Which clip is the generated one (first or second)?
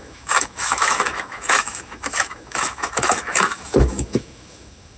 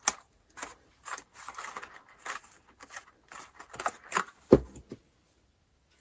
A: first